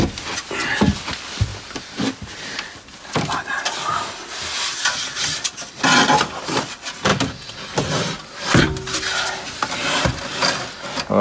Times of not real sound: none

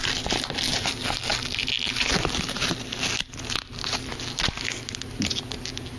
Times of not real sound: none

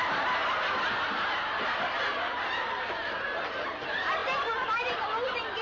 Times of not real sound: none

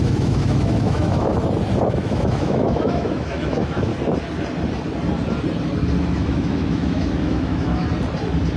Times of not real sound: 0.0-1.3; 1.9-3.9; 6.0-7.8

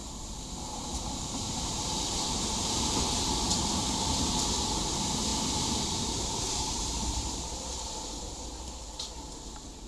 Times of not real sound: 0.0-3.8; 5.3-7.4